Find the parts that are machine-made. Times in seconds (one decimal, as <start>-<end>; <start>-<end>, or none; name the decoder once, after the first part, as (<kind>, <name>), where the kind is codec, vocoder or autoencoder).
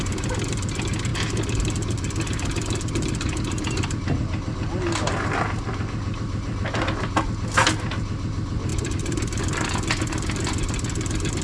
8.7-9.4 (vocoder, BigVGAN v2)